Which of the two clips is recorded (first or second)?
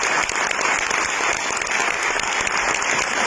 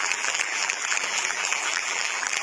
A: first